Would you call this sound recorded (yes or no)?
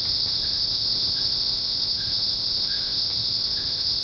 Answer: no